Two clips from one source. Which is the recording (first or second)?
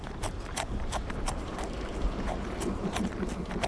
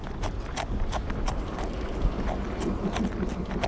second